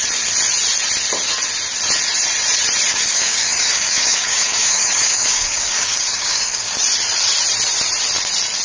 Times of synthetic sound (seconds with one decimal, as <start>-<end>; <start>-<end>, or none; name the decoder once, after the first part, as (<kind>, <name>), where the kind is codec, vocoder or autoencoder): 2.9-6.7 (codec, DAC)